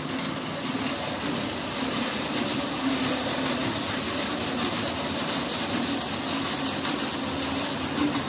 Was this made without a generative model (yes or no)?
yes